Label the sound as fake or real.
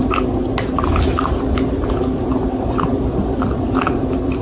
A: real